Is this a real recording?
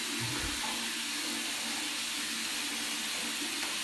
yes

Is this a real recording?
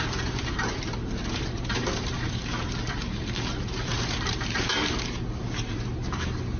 no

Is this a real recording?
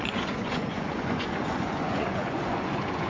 no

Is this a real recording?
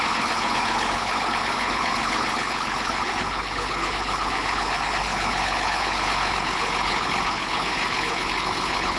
no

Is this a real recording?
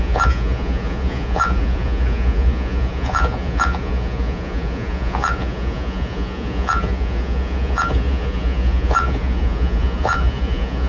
no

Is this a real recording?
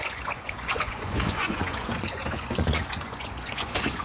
no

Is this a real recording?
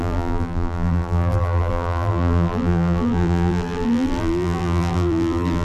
no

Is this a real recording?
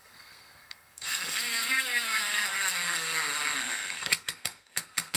no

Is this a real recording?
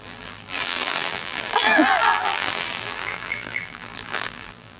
no